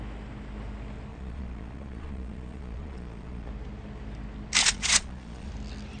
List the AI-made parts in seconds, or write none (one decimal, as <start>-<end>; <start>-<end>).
1.1-3.5; 4.6-5.5